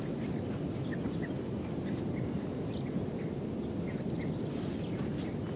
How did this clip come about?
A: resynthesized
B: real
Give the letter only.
B